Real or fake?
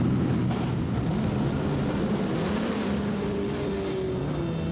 real